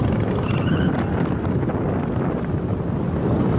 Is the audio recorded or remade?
recorded